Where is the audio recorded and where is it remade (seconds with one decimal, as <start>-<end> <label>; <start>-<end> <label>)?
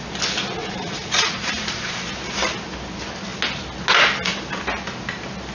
0.0-0.6 recorded; 0.6-1.8 remade; 1.8-5.5 recorded